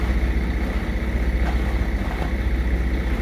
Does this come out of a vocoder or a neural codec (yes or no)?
no